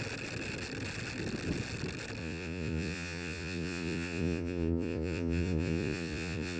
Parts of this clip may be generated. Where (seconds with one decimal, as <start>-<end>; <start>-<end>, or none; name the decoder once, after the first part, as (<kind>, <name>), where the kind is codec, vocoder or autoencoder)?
2.2-6.6 (vocoder, Vocos)